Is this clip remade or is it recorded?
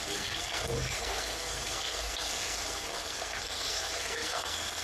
remade